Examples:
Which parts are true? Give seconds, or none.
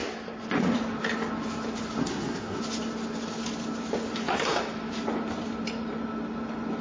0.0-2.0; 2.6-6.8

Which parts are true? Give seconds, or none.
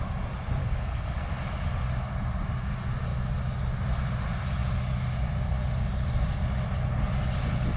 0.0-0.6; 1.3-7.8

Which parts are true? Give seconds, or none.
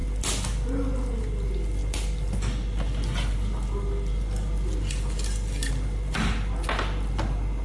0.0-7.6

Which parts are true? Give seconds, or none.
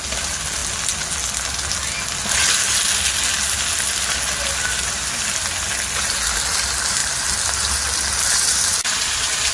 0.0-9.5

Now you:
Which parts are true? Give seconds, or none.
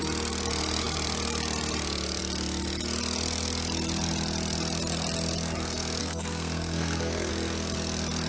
0.0-6.0; 7.3-8.3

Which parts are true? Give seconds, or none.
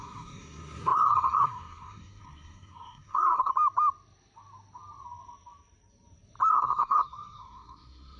3.5-6.5